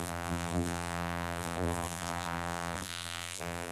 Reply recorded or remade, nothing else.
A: remade